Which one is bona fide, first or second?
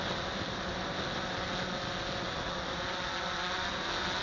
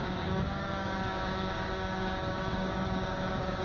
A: first